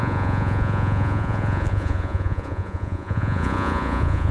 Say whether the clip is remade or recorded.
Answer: remade